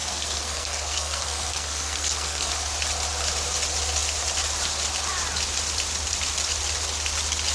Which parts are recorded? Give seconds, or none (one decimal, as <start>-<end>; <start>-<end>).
2.5-7.5